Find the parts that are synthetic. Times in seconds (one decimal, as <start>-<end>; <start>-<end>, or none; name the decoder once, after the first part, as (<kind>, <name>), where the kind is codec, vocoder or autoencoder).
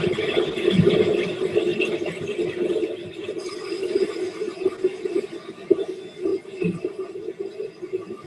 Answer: none